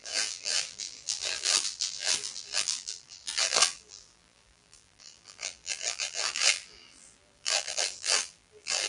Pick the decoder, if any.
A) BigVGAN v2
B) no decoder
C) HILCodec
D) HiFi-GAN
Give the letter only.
A